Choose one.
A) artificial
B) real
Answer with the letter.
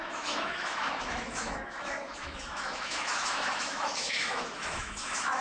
A